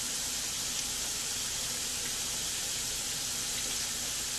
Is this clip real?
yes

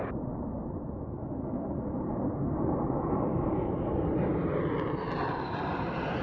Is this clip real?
yes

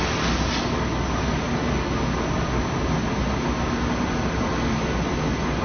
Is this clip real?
yes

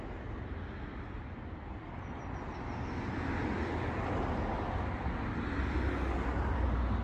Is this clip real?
yes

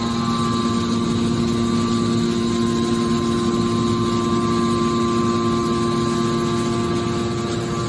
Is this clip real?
yes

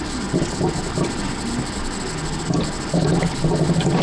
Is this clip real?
yes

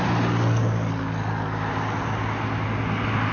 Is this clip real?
yes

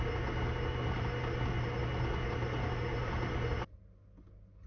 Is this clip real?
yes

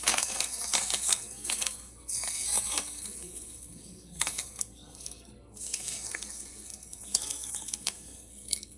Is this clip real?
no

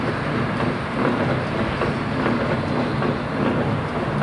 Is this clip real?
yes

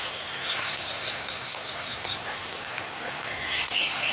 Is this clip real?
no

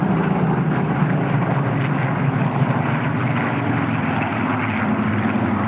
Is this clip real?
yes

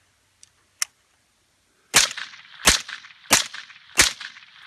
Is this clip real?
yes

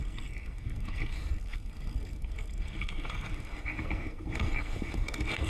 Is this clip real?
no